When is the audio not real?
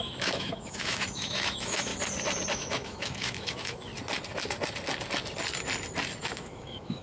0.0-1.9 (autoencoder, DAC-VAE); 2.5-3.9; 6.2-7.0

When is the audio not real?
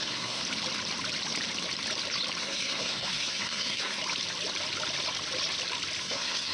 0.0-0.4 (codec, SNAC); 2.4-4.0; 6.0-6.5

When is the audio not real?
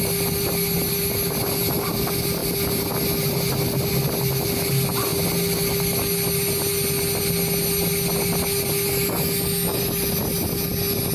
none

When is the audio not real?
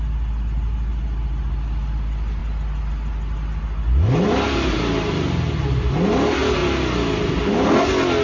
none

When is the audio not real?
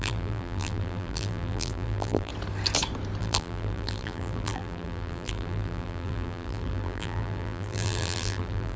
0.0-2.3 (vocoder, BigVGAN v2); 3.2-8.8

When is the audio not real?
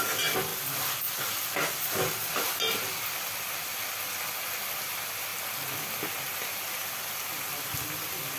none